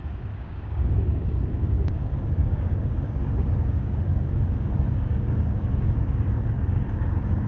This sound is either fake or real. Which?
fake